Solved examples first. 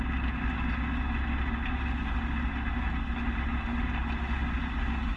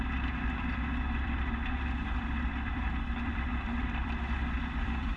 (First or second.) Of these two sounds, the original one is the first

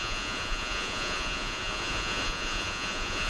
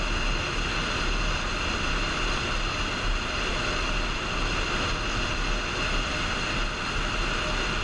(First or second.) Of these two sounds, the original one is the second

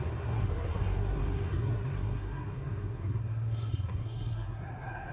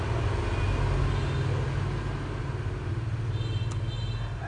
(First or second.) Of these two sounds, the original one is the second